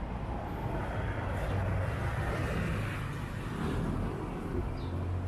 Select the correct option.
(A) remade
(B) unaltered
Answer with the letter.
B